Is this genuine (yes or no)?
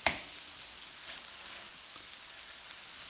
yes